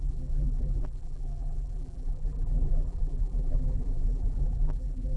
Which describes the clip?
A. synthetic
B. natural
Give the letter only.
A